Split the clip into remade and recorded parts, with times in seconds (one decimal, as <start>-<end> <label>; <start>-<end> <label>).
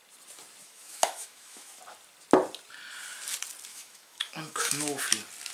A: 0.0-0.6 recorded; 0.6-1.8 remade; 1.8-3.7 recorded; 3.7-5.0 remade; 5.0-5.5 recorded